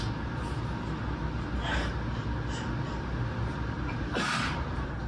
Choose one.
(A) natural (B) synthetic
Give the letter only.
A